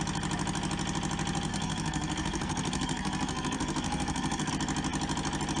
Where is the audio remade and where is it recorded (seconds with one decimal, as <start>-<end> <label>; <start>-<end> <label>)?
0.0-1.5 recorded; 1.5-4.5 remade; 4.5-5.6 recorded